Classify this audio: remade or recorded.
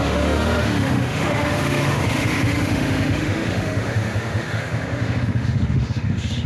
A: remade